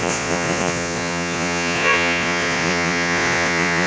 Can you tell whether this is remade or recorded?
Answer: remade